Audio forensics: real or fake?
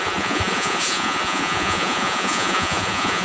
fake